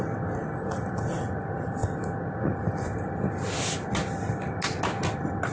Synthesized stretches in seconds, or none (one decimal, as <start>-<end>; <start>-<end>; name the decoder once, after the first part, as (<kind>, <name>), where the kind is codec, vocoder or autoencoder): none